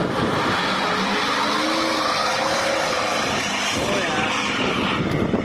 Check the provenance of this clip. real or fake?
real